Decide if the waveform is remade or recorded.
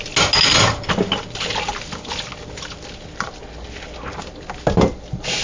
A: recorded